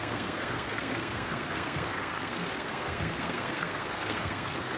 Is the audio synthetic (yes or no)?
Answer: yes